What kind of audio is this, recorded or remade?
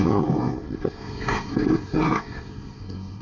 remade